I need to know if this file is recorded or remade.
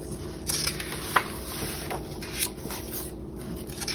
recorded